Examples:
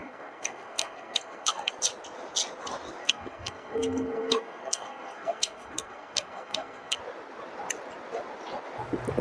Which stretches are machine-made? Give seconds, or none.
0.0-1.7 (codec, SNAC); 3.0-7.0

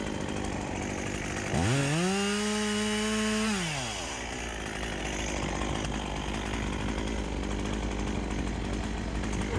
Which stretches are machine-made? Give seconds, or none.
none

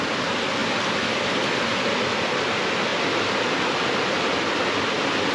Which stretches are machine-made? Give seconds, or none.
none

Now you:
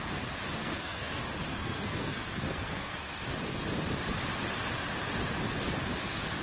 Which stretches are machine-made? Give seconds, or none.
0.6-1.2 (codec, SNAC); 1.6-3.2

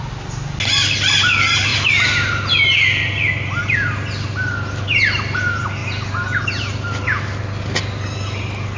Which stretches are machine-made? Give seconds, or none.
none

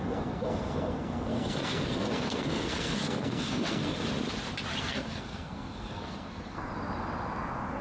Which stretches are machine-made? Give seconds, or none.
0.0-4.1 (codec, SNAC); 4.8-6.7

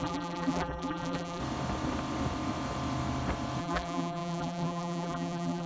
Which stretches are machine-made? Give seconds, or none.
0.0-1.4 (vocoder, BigVGAN v2); 3.6-5.7